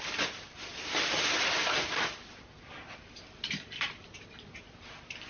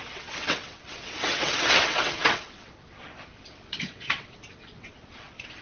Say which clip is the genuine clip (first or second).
first